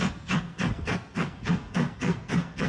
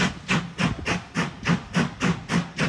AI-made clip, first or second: first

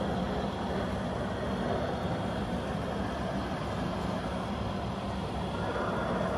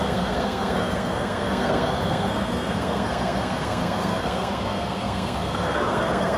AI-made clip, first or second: second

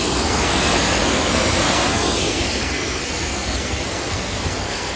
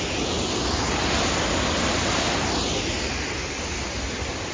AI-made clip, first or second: first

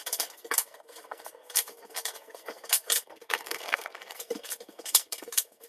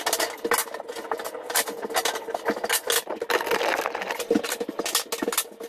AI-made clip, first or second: first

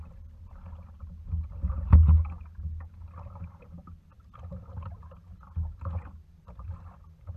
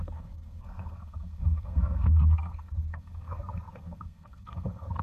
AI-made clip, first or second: second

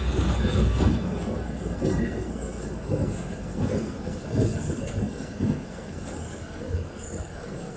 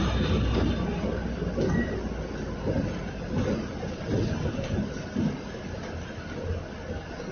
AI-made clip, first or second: first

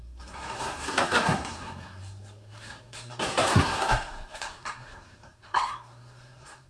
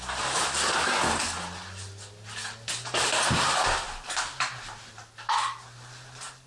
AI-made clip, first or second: first